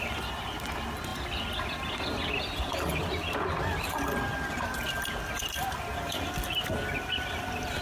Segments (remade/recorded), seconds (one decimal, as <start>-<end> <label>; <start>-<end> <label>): 0.0-1.1 recorded; 1.1-2.9 remade; 2.9-7.8 recorded